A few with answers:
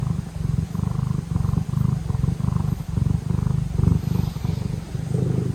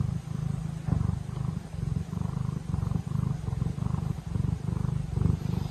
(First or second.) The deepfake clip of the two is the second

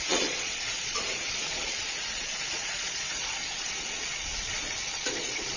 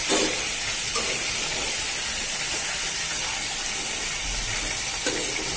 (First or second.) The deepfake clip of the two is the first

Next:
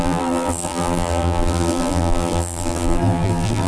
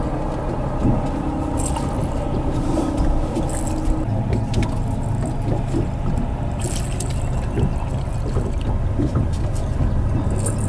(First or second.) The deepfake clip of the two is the first